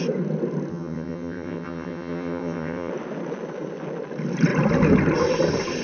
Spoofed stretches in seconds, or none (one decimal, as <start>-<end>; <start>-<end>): 0.7-2.9